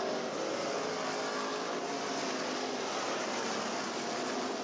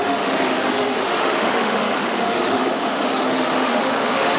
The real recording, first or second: first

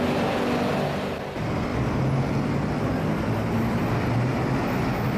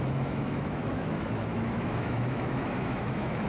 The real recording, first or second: first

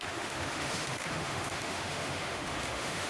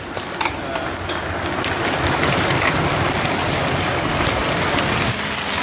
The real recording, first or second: second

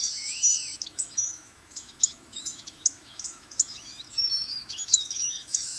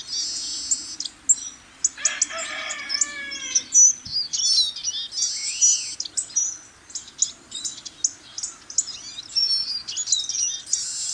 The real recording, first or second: second